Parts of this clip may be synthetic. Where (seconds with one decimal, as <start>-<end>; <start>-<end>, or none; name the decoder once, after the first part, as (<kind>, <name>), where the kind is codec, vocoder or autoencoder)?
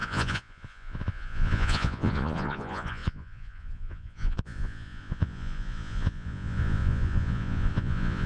0.0-8.3 (vocoder, Vocos)